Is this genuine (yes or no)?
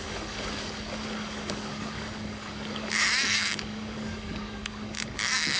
no